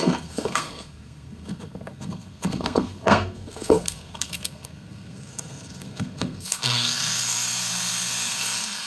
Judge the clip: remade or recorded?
remade